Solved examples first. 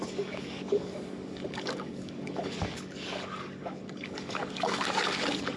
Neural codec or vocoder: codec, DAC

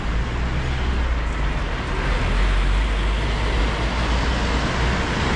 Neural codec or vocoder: none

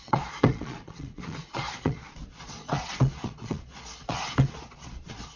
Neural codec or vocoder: vocoder, Vocos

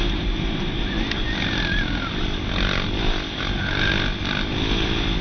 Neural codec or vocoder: none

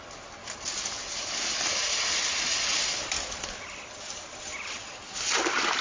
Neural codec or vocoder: none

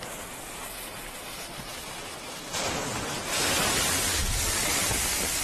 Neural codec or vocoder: none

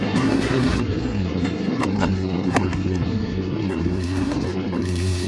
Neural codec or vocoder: codec, SNAC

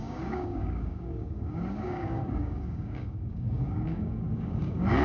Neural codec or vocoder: codec, DAC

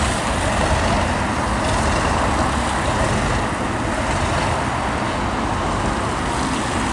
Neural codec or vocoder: none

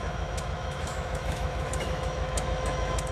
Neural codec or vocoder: autoencoder, DAC-VAE